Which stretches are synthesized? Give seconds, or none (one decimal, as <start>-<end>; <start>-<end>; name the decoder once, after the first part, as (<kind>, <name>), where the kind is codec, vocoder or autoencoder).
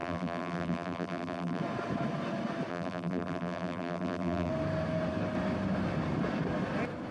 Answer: 0.0-1.6 (vocoder, BigVGAN v2); 2.7-4.5